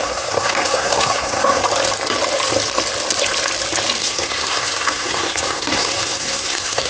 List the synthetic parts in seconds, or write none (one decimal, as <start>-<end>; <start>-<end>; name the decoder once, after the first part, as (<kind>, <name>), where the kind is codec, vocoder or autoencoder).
0.0-1.6 (codec, SNAC); 4.0-6.9